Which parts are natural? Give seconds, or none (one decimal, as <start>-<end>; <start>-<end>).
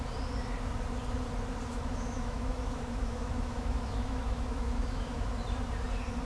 0.0-1.7; 5.3-6.2